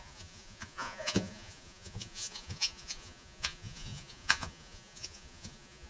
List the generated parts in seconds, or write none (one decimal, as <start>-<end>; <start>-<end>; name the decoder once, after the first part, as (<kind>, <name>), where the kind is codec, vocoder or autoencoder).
0.0-5.9 (vocoder, Vocos)